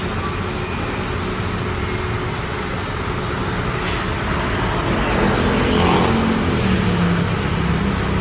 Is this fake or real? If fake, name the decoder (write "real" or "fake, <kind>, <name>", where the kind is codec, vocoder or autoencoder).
real